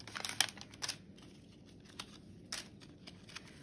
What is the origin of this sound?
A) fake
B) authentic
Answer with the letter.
B